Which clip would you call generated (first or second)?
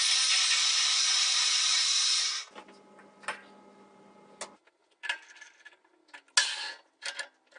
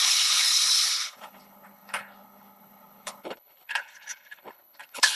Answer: second